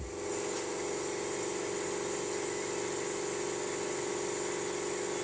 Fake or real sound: real